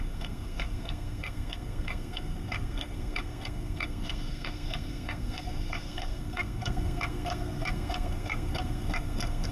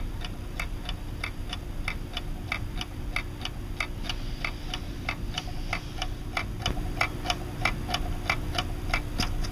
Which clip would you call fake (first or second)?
first